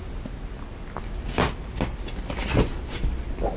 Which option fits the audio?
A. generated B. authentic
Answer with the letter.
B